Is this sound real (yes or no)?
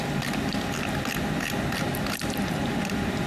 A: yes